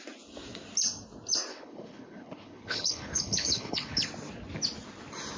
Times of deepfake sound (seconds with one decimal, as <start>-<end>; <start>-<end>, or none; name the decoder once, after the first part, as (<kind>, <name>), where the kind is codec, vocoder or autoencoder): 1.5-4.0 (codec, HILCodec)